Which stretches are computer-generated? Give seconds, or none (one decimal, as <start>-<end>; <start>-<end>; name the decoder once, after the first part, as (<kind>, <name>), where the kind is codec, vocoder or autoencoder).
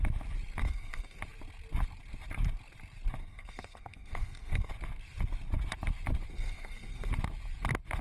0.6-1.2 (codec, SNAC); 3.2-4.7; 6.3-7.1